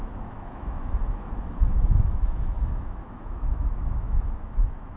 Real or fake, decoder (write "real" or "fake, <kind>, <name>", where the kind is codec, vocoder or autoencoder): fake, autoencoder, DAC-VAE